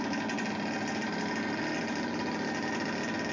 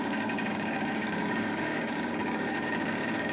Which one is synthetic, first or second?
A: second